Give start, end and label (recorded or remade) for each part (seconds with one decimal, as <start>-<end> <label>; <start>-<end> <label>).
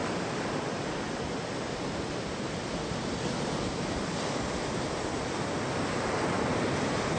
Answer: 0.0-7.2 recorded